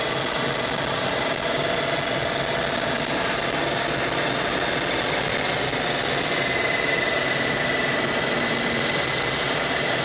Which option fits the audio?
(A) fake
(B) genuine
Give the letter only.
B